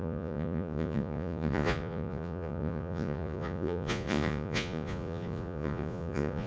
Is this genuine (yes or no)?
no